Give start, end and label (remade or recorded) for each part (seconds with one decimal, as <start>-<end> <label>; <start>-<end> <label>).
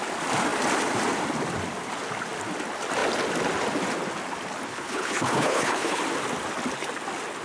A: 0.0-4.7 recorded; 4.7-6.0 remade; 6.0-7.4 recorded